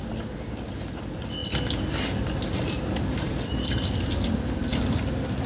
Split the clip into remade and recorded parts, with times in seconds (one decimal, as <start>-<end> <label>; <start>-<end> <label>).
0.0-5.5 recorded